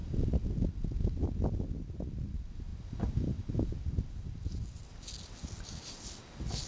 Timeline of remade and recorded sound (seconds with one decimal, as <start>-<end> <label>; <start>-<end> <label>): 0.0-6.7 recorded